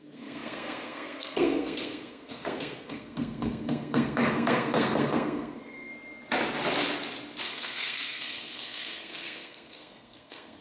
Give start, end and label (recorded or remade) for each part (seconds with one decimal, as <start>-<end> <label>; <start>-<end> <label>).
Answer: 0.0-5.9 remade; 5.9-7.4 recorded; 7.4-10.6 remade